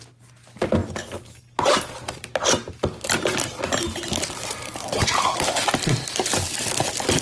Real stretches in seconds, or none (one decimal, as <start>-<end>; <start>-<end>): 0.0-7.2